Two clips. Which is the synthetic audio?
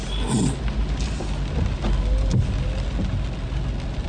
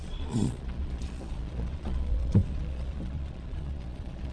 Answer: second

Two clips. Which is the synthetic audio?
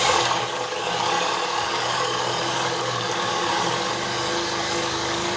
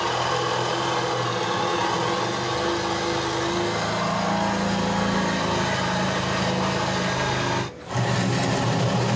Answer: first